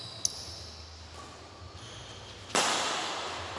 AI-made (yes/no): no